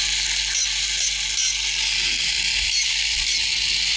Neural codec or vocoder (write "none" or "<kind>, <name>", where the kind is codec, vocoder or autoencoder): none